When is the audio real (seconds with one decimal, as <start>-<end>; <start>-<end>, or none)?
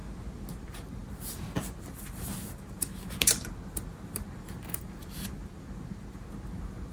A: 0.0-0.5